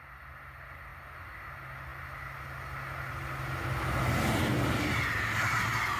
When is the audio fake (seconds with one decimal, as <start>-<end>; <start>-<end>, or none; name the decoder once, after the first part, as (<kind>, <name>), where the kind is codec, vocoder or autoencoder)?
none